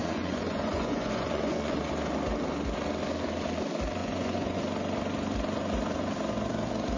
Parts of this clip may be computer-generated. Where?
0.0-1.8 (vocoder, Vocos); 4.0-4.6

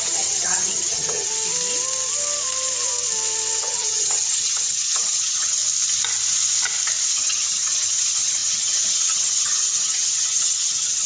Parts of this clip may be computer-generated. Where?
0.0-1.3 (vocoder, HiFi-GAN); 3.6-5.6; 7.1-11.1

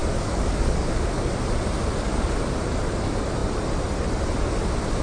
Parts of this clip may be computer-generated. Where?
0.0-1.3 (codec, DAC); 1.8-2.5

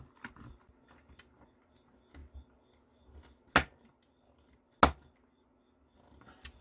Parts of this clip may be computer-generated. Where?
none

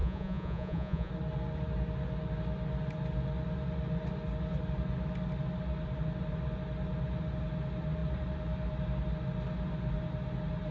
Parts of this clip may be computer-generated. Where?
0.0-1.1 (vocoder, Vocos)

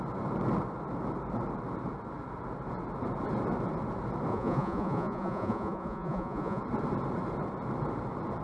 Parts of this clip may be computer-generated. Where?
4.3-6.6 (vocoder, Vocos)

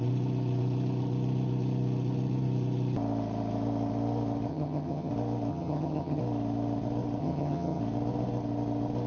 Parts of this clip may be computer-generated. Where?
4.5-5.1 (vocoder, HiFi-GAN); 5.5-6.2; 7.2-7.8

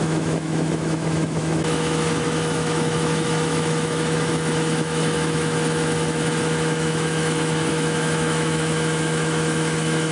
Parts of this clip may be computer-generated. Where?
0.0-10.1 (autoencoder, DAC-VAE)